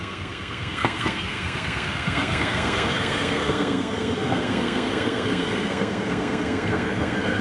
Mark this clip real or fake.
fake